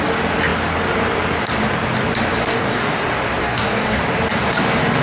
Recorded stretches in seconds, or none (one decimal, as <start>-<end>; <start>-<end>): 0.0-2.5; 3.0-3.4; 4.0-5.0